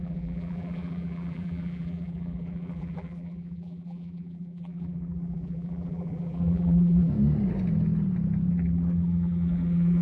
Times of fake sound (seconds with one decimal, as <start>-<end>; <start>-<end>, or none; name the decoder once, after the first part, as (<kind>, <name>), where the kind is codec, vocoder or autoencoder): 0.0-7.1 (vocoder, BigVGAN v2); 8.5-10.0